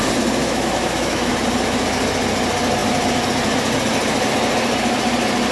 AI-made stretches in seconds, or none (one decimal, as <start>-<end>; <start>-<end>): 0.4-1.3